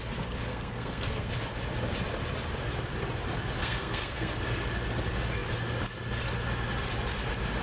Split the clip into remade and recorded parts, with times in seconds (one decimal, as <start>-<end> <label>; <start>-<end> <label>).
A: 0.0-0.5 recorded; 0.5-1.3 remade; 1.3-3.6 recorded; 3.6-4.3 remade; 4.3-7.6 recorded